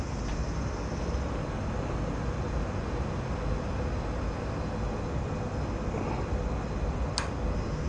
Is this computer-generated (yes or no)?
no